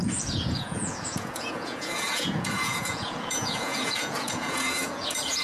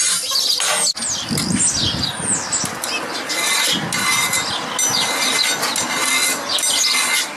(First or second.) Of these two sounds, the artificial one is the first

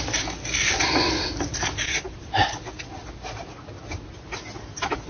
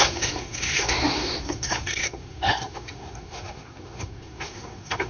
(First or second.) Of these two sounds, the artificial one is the second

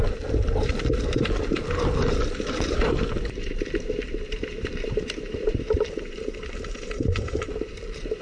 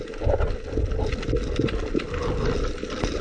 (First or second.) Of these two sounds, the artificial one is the first